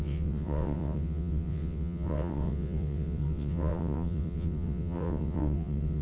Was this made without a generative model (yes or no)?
no